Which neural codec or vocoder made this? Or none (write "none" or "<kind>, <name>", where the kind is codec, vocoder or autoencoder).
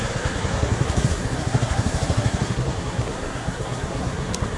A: codec, SNAC